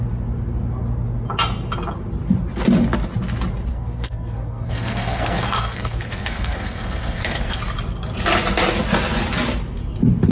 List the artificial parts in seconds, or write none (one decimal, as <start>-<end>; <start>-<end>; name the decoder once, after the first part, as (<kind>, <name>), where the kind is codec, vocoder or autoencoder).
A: 3.7-7.6 (codec, SNAC)